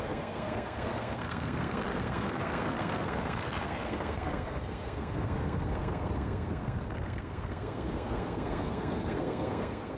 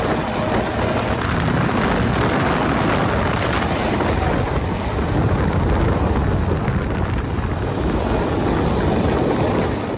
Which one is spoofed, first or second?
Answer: first